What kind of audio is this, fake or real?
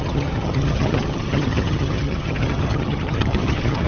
fake